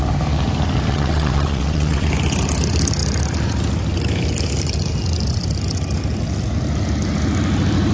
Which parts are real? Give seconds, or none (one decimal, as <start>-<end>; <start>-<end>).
0.0-0.9; 2.1-7.9